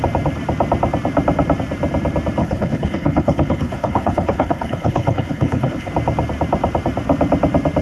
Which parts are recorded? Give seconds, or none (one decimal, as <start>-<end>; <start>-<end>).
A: 0.0-2.4; 5.9-7.8